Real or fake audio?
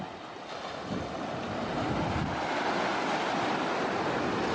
real